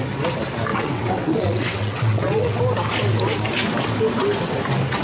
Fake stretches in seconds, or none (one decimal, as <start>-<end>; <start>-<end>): 0.7-2.6